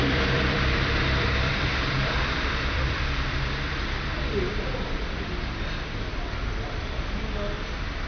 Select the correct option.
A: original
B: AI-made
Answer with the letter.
B